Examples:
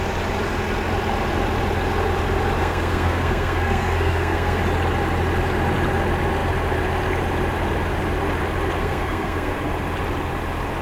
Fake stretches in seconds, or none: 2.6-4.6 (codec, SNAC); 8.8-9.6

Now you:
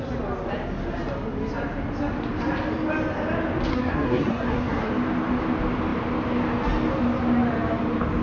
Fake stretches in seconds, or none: 3.7-4.9 (codec, SNAC)

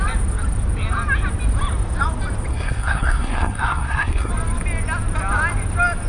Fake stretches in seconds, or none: 2.5-4.3 (codec, SNAC)

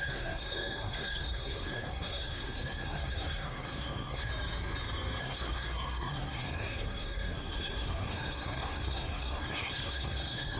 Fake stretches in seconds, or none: 0.0-4.3 (codec, SNAC); 5.2-10.6

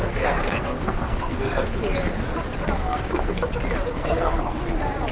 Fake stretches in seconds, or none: 0.0-1.7 (codec, SNAC); 2.8-3.5; 3.9-4.6

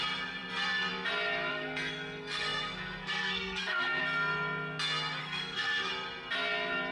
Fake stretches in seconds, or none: 1.5-4.0 (codec, SNAC); 5.2-5.9

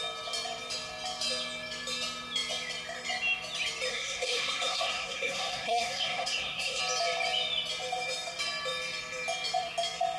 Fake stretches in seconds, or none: 3.9-6.8 (codec, SNAC)

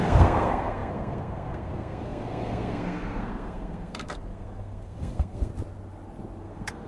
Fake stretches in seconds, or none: 0.0-5.5 (codec, SNAC); 6.4-6.9